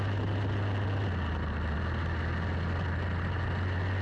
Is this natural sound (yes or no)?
yes